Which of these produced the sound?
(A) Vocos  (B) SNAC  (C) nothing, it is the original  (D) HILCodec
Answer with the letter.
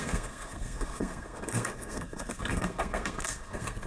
B